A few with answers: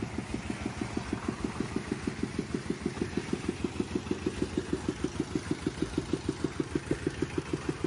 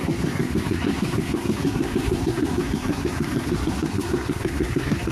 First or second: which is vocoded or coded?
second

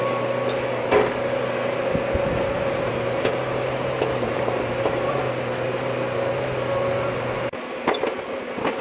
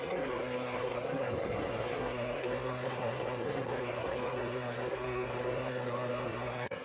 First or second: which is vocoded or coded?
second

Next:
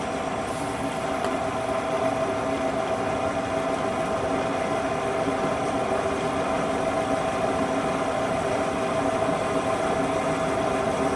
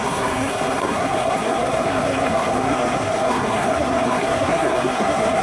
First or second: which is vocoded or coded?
second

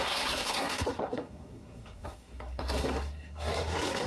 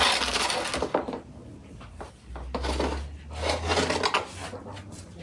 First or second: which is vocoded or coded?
first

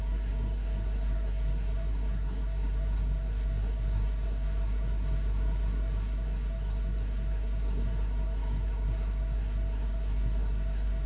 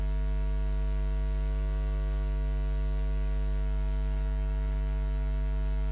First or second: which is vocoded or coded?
first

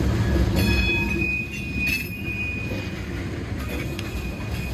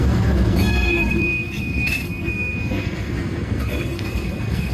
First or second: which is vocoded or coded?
second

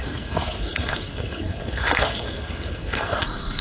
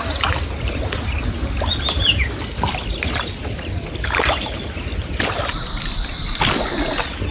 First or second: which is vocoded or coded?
first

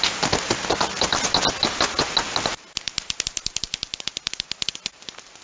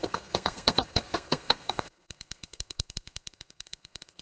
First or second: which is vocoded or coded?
second